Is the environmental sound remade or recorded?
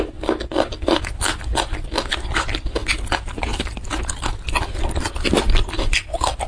recorded